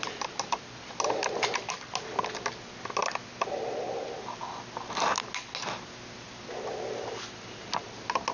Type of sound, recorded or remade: recorded